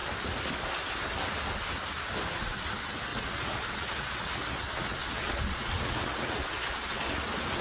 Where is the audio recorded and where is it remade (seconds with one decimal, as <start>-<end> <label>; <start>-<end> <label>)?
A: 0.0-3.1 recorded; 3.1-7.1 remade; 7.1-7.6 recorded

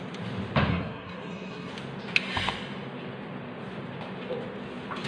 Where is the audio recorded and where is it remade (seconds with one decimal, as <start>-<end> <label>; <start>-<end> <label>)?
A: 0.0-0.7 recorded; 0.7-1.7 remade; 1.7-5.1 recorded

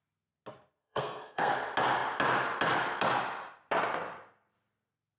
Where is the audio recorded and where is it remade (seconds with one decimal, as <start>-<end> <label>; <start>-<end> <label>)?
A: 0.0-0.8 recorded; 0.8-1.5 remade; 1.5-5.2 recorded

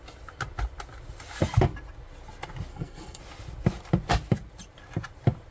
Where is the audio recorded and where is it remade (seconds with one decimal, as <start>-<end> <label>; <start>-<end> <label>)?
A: 0.0-2.7 recorded; 2.7-3.2 remade; 3.2-5.5 recorded

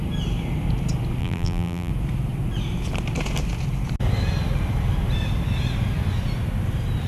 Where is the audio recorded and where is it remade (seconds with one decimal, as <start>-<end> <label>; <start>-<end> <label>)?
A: 0.0-1.2 recorded; 1.2-1.9 remade; 1.9-7.1 recorded

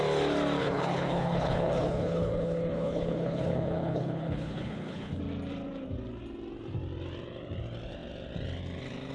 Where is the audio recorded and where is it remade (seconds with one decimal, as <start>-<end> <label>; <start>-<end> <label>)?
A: 0.0-0.6 recorded; 0.6-5.2 remade; 5.2-9.1 recorded